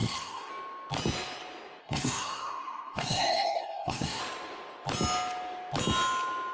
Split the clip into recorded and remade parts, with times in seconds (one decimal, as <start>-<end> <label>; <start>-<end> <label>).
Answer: 0.0-0.5 remade; 0.5-1.8 recorded; 1.8-4.2 remade; 4.2-6.5 recorded